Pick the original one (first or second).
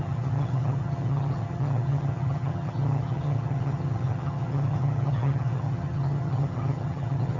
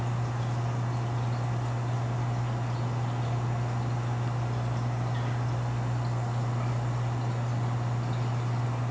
second